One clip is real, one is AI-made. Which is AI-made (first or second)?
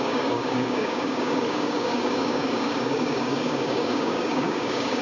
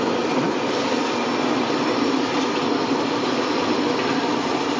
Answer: first